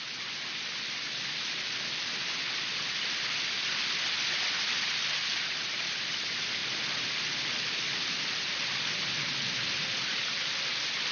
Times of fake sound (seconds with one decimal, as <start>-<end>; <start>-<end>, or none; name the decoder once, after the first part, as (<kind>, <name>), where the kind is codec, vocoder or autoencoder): 6.6-8.5 (vocoder, BigVGAN v2)